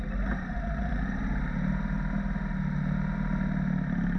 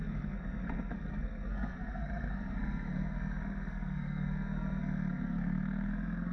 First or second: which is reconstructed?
second